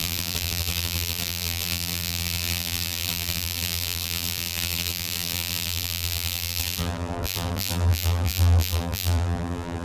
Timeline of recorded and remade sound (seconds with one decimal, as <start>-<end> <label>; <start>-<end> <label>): 0.0-9.8 remade